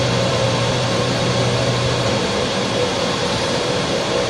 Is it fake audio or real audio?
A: fake